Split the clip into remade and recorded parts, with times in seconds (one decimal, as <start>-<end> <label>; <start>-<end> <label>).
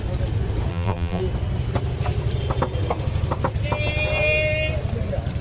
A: 0.0-0.7 recorded; 0.7-1.2 remade; 1.2-5.4 recorded